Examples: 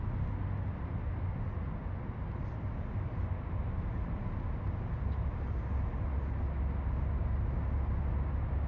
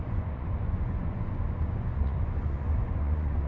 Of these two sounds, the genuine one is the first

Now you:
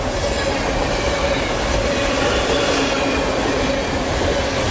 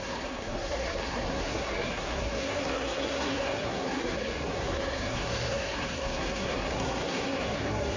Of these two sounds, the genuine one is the first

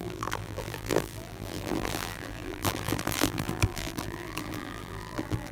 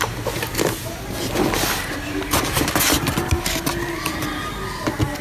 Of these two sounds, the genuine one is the second